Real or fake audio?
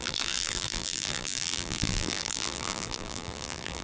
fake